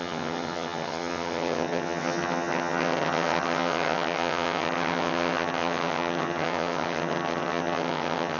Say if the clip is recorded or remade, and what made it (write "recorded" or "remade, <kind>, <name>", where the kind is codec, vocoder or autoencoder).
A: remade, vocoder, HiFi-GAN